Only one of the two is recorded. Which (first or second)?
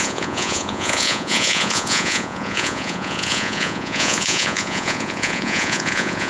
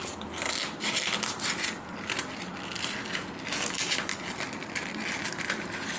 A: second